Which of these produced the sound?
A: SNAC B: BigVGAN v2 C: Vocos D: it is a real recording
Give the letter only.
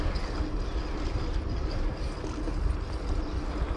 D